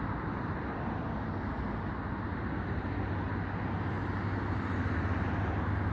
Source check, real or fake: real